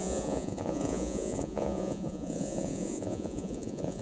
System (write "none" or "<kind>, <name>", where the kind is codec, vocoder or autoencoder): vocoder, Vocos